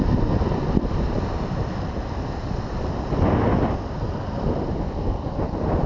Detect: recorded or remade recorded